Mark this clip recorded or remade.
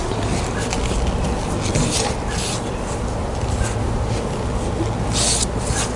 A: recorded